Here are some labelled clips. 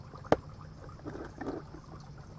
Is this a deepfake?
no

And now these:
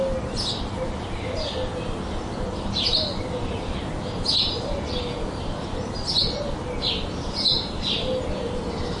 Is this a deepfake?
no